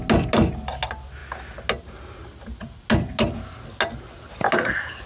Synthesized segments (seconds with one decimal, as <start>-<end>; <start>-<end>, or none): none